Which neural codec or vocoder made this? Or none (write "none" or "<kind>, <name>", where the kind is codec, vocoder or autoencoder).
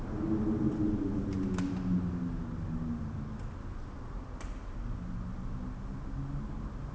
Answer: none